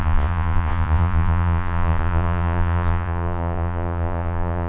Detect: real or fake fake